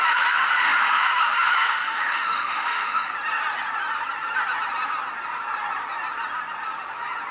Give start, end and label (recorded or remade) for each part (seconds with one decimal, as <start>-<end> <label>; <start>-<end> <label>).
0.0-3.1 remade; 3.1-7.3 recorded